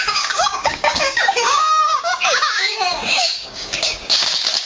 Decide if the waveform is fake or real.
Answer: fake